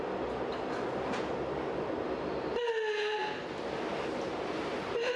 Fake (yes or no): no